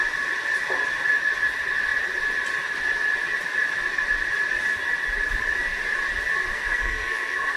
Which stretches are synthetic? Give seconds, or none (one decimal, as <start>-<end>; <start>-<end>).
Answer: 6.5-7.6